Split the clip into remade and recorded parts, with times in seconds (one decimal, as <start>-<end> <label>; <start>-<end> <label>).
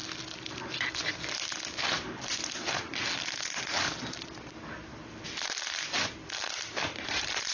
0.0-7.5 recorded